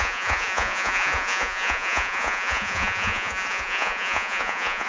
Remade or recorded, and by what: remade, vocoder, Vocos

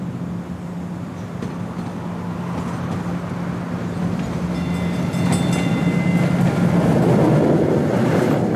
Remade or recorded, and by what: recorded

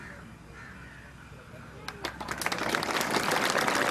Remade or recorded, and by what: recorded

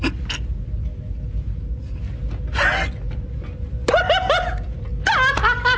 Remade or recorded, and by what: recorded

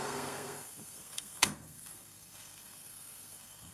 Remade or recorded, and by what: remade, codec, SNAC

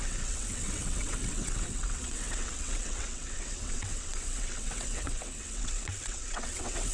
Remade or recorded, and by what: remade, vocoder, WaveNeXt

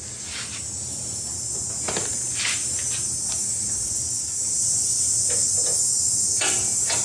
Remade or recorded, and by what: recorded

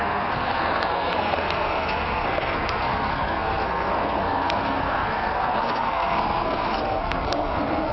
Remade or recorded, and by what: remade, codec, SNAC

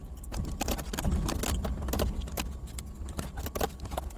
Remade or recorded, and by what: recorded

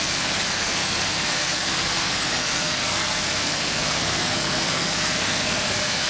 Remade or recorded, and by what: remade, codec, SNAC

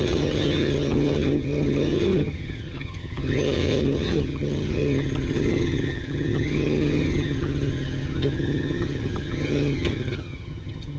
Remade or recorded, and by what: remade, vocoder, HiFi-GAN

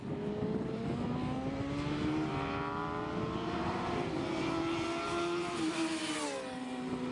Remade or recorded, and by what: recorded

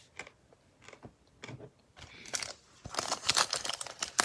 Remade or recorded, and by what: recorded